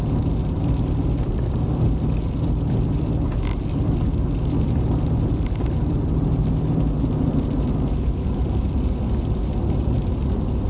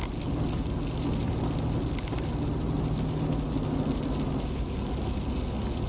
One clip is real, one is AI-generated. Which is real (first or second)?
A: second